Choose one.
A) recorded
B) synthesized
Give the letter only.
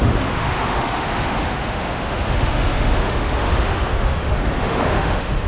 B